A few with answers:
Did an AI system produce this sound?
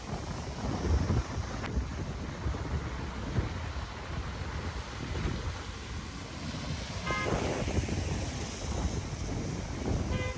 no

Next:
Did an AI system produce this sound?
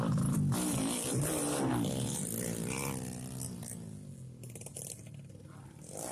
no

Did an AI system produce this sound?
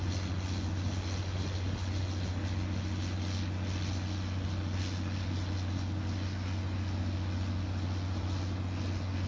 no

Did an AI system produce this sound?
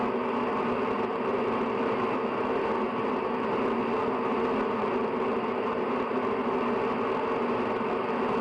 no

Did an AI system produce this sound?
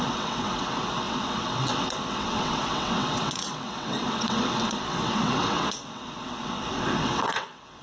yes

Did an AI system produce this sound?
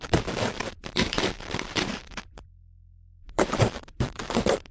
yes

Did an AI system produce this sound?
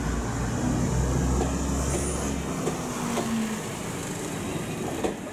no